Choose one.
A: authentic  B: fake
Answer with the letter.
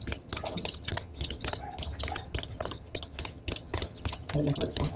B